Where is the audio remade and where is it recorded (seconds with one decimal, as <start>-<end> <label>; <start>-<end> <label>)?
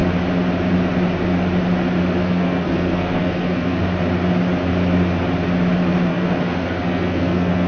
0.0-2.2 recorded; 2.2-3.8 remade; 3.8-6.1 recorded; 6.1-7.7 remade